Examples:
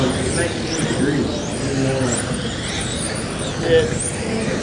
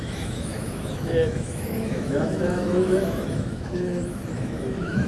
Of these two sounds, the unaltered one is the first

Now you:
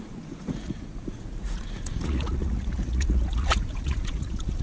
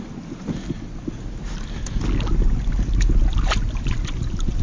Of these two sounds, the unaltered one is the second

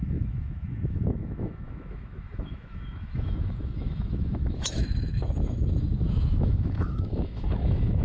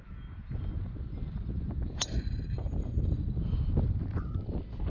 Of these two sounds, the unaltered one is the second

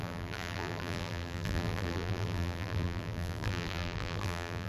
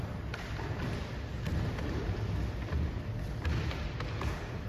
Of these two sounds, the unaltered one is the second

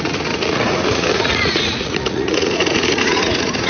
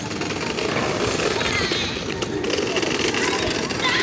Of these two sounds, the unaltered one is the second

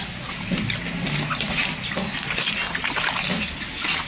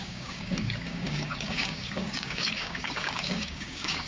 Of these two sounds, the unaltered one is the first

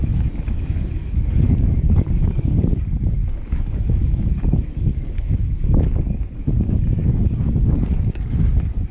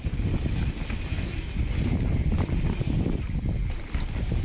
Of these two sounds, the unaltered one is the second